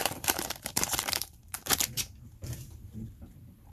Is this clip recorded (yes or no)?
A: no